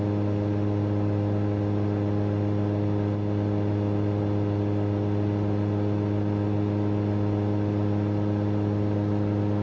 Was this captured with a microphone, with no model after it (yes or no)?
yes